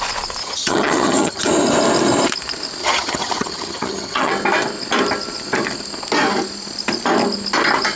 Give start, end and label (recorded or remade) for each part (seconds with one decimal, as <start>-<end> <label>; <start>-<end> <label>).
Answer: 0.0-0.4 recorded; 0.4-1.4 remade; 1.4-2.8 recorded; 2.8-4.3 remade; 4.3-8.0 recorded